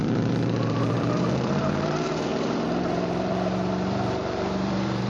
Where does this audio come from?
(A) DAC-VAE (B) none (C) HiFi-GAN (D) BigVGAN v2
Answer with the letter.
D